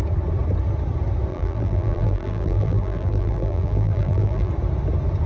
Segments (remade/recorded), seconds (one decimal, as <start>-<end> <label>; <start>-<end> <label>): 0.0-1.3 recorded; 1.3-4.5 remade; 4.5-5.3 recorded